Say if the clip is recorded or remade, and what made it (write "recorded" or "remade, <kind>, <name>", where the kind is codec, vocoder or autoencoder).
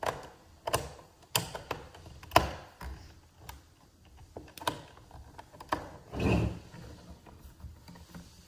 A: recorded